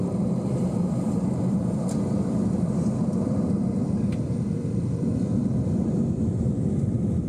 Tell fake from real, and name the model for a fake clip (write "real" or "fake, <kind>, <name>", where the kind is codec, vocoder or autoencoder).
fake, vocoder, BigVGAN v2